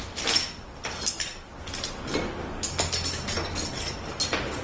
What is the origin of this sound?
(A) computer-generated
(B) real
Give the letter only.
B